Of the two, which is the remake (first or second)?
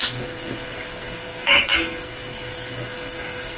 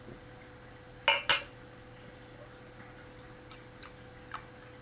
first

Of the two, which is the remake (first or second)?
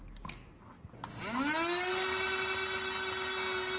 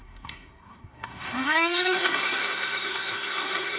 second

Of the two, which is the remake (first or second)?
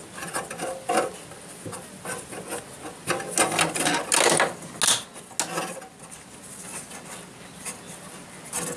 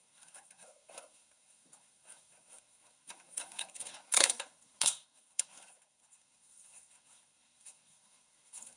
second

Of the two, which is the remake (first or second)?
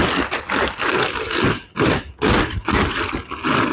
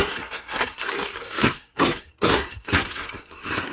second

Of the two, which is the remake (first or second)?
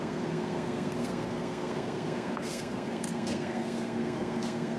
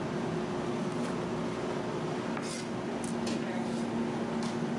first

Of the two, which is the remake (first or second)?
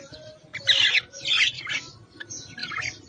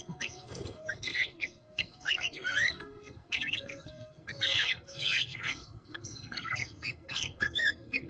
second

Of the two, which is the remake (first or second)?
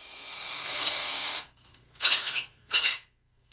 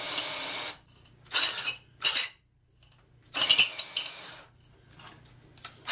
first